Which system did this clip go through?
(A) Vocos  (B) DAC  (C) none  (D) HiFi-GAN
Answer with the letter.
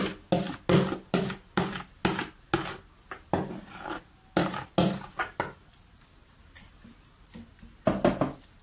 C